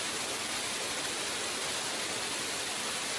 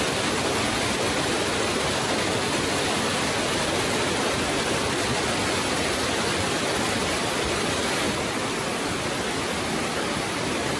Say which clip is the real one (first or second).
first